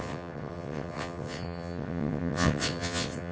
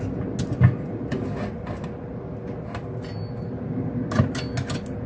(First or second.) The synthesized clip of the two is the first